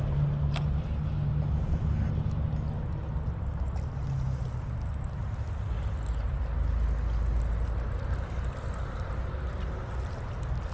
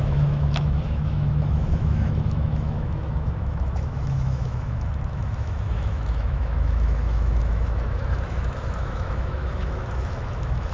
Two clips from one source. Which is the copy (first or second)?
second